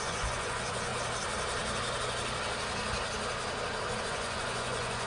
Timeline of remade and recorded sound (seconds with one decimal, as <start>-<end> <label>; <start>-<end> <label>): 0.0-0.9 remade; 0.9-4.0 recorded; 4.0-5.1 remade

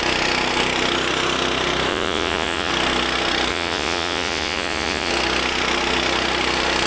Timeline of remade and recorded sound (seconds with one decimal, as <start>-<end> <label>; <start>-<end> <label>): 0.0-1.9 recorded; 1.9-2.7 remade; 2.7-3.5 recorded; 3.5-5.1 remade; 5.1-6.9 recorded

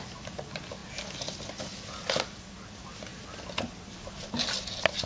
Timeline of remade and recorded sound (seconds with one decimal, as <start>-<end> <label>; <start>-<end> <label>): 0.0-5.1 recorded

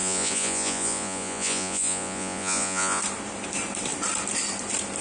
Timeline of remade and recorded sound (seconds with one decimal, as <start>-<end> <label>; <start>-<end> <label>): 0.0-3.0 remade; 3.0-5.0 recorded

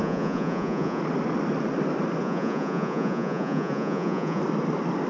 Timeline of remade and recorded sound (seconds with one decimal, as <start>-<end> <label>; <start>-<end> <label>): 0.0-1.0 remade; 1.0-2.2 recorded; 2.2-4.4 remade; 4.4-5.1 recorded

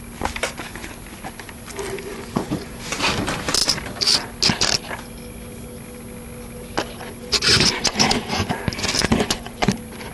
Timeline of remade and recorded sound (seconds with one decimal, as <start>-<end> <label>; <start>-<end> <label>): 0.0-2.1 recorded; 2.1-2.7 remade; 2.7-7.2 recorded; 7.2-8.5 remade; 8.5-9.0 recorded; 9.0-9.7 remade; 9.7-10.1 recorded

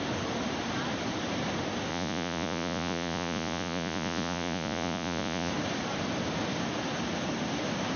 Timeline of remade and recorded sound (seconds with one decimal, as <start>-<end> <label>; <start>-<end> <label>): 0.0-1.9 recorded; 1.9-5.5 remade; 5.5-8.0 recorded